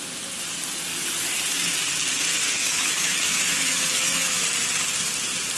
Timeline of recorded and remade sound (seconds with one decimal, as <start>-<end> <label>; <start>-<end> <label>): 0.0-2.6 recorded; 2.6-4.4 remade; 4.4-5.6 recorded